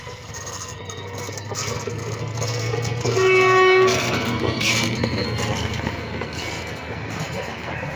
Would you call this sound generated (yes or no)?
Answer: yes